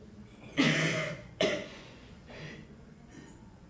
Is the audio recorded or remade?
remade